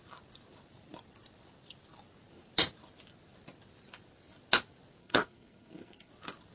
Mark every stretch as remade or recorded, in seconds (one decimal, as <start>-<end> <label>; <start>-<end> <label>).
0.0-5.0 recorded; 5.0-6.1 remade; 6.1-6.5 recorded